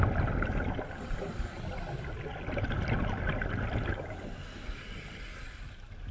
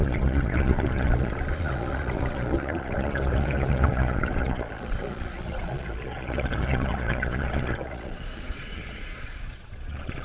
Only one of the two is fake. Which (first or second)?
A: second